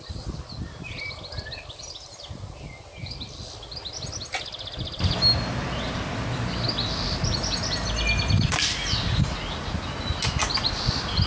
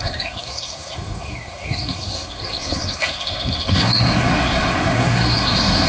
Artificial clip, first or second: second